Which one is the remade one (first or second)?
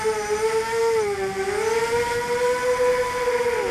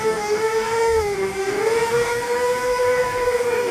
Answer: second